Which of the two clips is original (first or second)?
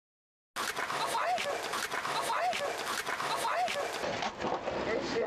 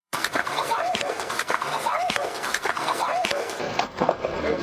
first